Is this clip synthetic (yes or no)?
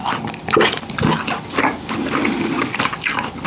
no